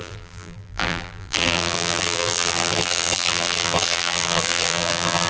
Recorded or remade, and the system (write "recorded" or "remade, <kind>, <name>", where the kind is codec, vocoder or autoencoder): remade, vocoder, BigVGAN v2